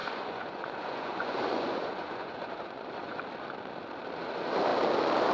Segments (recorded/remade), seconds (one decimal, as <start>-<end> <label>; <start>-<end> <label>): 0.0-3.2 remade; 3.2-5.3 recorded